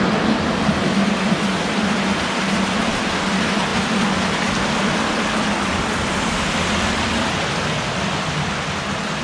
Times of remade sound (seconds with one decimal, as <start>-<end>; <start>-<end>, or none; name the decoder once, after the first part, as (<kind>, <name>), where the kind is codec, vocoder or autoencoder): none